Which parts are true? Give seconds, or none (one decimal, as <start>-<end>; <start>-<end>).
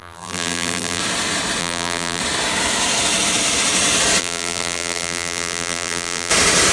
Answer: 1.0-1.6; 2.2-4.2; 6.3-6.7